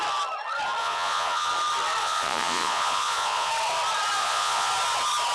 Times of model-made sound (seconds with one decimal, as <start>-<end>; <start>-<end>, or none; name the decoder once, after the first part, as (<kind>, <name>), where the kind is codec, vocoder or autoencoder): 0.8-1.5 (vocoder, Vocos); 2.0-3.5; 4.2-4.7